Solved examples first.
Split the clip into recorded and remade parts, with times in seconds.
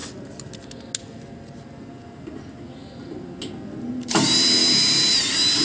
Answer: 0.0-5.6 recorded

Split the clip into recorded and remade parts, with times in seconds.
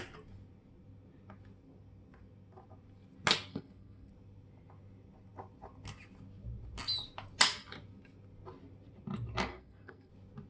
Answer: 0.0-3.5 recorded; 3.5-4.1 remade; 4.1-9.5 recorded; 9.5-10.1 remade; 10.1-10.5 recorded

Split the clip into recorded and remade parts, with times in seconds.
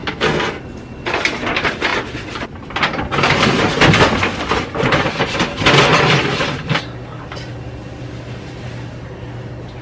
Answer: 0.0-0.6 remade; 0.6-9.8 recorded